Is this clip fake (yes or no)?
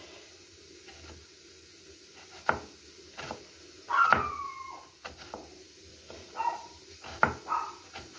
no